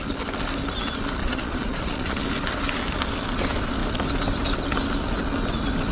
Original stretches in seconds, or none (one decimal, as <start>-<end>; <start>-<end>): 0.0-1.2; 2.2-5.9

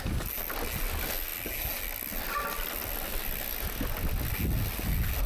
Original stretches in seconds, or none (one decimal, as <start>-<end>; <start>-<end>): 0.0-5.3

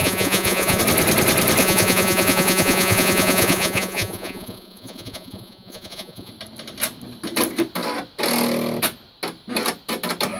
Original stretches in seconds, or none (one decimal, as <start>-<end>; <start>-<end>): 0.8-1.6; 6.3-10.4